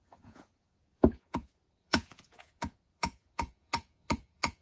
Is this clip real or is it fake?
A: fake